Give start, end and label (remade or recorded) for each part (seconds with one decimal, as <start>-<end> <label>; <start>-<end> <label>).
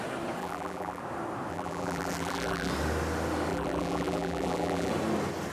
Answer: 0.0-0.4 recorded; 0.4-1.0 remade; 1.0-1.5 recorded; 1.5-2.7 remade; 2.7-3.5 recorded; 3.5-4.9 remade; 4.9-5.5 recorded